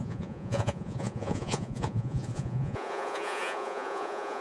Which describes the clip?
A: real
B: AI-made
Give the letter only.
B